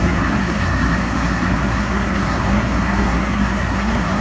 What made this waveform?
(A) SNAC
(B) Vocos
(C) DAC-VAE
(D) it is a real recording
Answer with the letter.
A